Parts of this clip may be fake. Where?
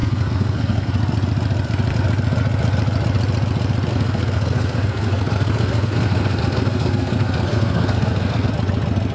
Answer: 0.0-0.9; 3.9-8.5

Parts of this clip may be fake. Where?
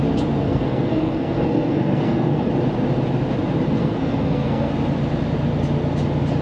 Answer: 0.4-2.5; 3.8-4.7